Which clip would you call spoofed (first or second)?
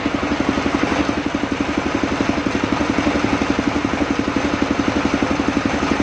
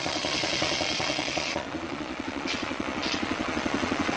second